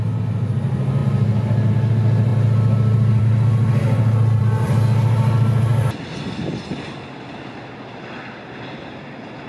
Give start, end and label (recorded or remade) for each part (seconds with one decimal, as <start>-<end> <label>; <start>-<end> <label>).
0.0-9.5 recorded